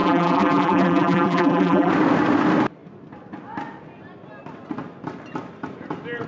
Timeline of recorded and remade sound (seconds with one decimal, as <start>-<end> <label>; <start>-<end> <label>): 0.0-1.9 remade; 1.9-6.3 recorded